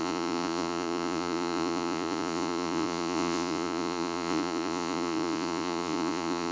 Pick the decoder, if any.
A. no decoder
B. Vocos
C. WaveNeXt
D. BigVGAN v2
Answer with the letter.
B